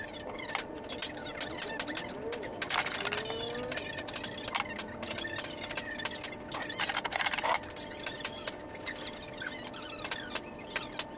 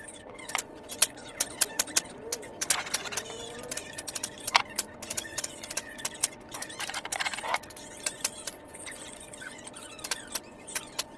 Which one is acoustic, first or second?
first